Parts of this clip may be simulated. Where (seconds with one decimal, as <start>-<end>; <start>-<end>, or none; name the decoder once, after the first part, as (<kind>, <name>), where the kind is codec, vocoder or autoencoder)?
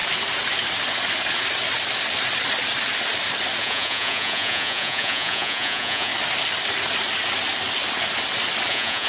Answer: 3.6-6.1 (vocoder, Vocos); 8.7-9.1